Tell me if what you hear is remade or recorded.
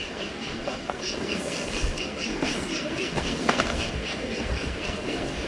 remade